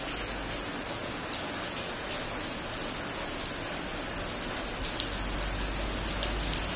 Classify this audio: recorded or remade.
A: recorded